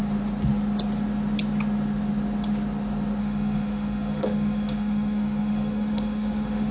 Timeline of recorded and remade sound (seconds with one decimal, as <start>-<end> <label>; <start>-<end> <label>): 0.0-3.2 recorded; 3.2-6.7 remade